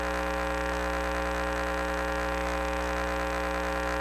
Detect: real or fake real